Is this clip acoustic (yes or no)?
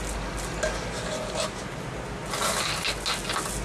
yes